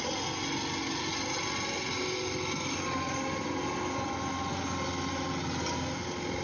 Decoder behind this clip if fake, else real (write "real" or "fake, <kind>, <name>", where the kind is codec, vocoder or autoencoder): real